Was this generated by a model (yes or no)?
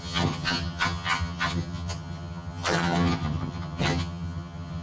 yes